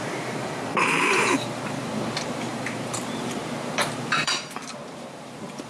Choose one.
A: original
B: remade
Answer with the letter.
B